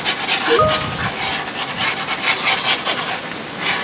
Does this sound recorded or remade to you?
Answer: recorded